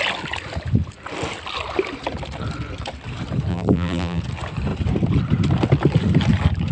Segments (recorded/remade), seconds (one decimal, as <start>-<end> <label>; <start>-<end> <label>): 0.0-3.5 recorded; 3.5-4.2 remade; 4.2-6.7 recorded